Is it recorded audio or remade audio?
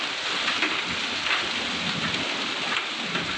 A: recorded